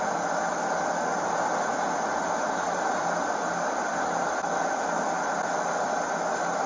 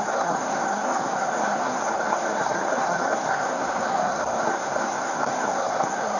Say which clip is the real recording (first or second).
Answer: first